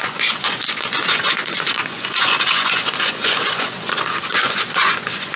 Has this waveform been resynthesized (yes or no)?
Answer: yes